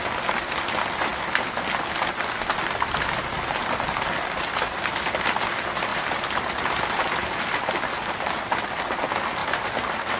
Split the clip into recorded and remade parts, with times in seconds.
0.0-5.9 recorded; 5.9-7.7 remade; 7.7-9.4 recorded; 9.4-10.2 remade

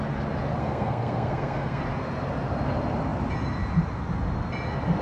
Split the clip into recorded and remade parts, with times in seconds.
0.0-0.6 recorded; 0.6-1.8 remade; 1.8-5.0 recorded

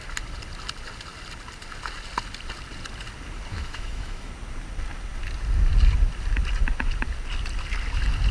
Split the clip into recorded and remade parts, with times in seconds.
0.0-3.5 recorded; 3.5-4.3 remade; 4.3-8.3 recorded

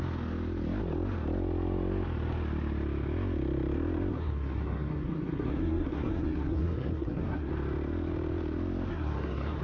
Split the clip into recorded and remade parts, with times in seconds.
0.0-4.1 recorded; 4.1-7.5 remade; 7.5-8.9 recorded; 8.9-9.6 remade

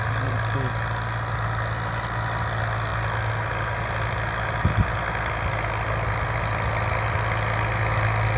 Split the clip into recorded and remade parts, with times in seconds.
0.0-8.4 recorded

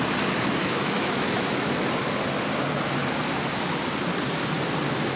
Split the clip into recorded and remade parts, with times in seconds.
0.0-0.6 recorded; 0.6-1.8 remade; 1.8-5.2 recorded